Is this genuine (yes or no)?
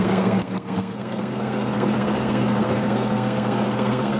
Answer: no